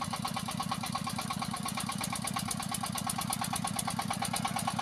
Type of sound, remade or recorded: recorded